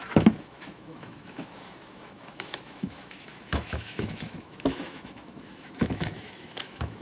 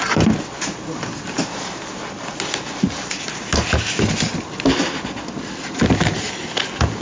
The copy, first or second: first